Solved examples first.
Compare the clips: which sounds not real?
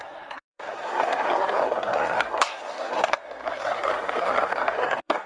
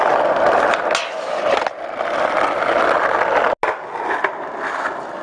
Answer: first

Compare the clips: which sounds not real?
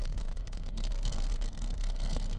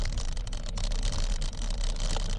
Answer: first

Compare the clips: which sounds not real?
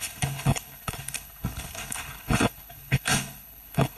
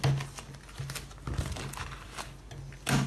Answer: first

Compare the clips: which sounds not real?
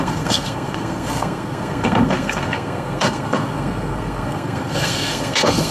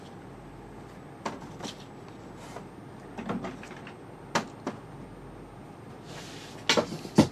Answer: first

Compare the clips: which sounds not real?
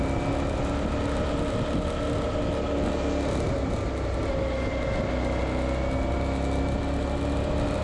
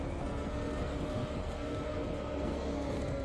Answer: second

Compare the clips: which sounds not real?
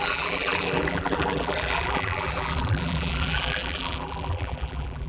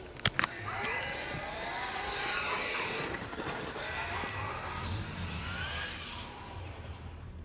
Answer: first